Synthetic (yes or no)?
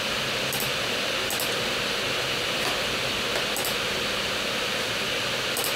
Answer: no